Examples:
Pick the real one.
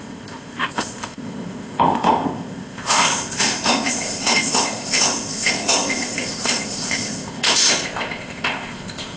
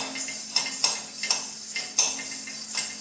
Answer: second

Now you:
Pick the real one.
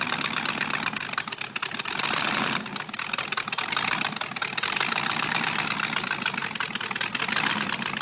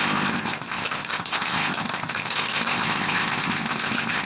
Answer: first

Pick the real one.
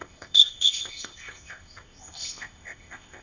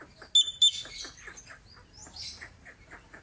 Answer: second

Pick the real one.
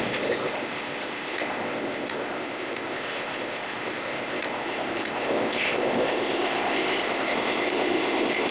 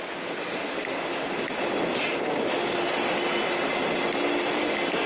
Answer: second